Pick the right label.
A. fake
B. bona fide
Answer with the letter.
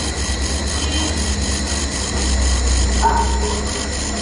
B